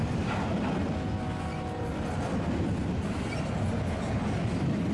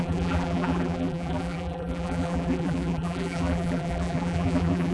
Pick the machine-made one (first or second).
second